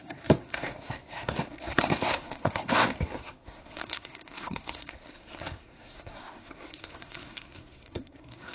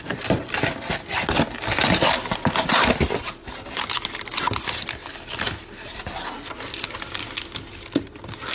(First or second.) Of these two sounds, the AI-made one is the first